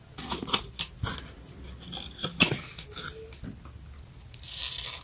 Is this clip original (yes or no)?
yes